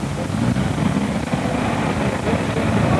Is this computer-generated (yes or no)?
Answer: no